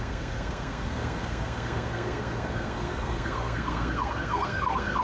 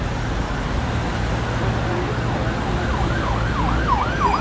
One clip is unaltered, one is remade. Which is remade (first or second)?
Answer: first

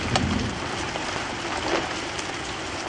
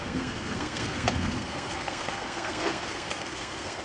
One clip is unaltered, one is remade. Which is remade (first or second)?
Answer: second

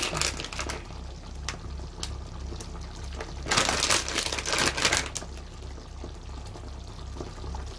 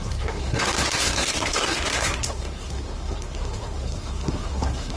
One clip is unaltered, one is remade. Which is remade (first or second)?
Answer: second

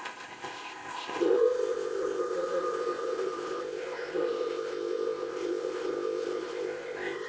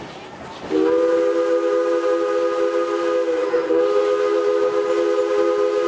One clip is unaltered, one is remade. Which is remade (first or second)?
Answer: first